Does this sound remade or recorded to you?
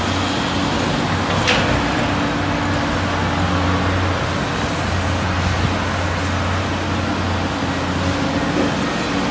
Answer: recorded